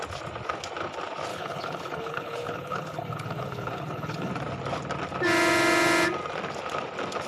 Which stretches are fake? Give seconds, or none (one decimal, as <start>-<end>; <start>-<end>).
1.3-4.3